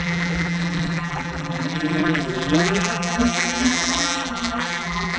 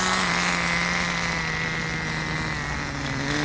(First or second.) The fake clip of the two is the first